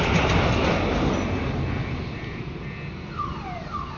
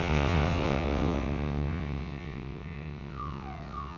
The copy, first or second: second